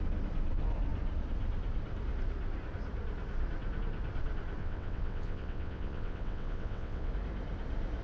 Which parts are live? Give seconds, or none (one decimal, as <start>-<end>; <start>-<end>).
0.0-4.6; 7.1-8.0

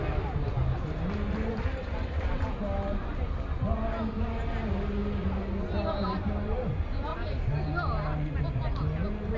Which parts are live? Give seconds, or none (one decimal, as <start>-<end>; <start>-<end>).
0.0-1.8; 2.4-9.4

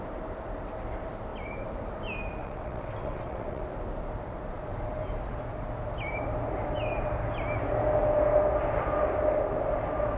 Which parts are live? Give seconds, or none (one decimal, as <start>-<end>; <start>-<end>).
0.0-2.4; 3.6-10.2

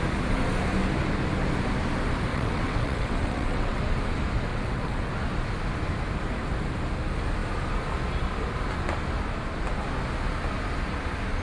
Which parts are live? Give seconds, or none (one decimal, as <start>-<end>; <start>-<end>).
0.0-2.3; 3.8-4.5; 5.1-11.4

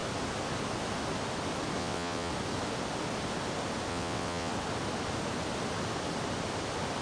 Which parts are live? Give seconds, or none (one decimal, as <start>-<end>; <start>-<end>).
0.0-1.8; 2.3-3.9; 4.5-7.0

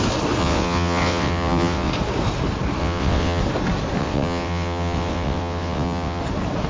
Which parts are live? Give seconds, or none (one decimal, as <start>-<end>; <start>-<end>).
0.0-0.4; 1.9-2.8; 3.4-4.0; 6.2-6.7

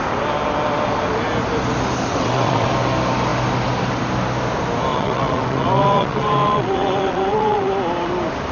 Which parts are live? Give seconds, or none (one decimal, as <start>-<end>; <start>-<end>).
0.0-2.1; 2.7-4.9; 7.7-8.5

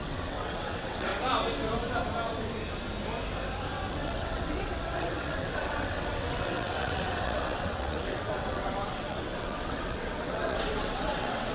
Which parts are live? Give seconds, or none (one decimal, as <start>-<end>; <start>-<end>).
1.1-3.9